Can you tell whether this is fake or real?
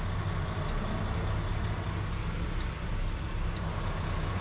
real